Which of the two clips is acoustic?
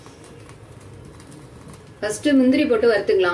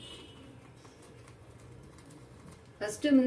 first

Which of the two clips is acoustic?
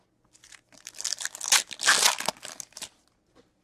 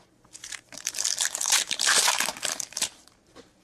first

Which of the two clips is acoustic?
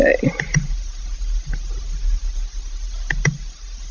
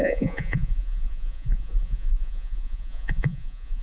first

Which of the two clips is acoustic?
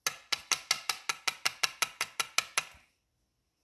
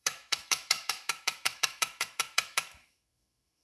first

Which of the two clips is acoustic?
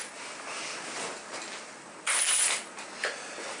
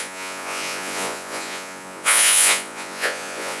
first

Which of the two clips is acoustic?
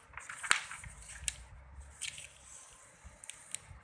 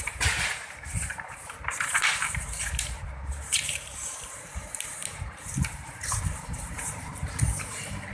first